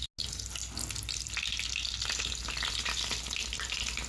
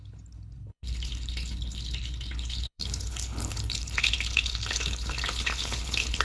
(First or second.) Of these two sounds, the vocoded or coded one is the second